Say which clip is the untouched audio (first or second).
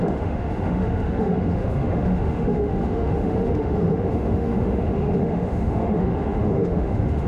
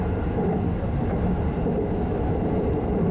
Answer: second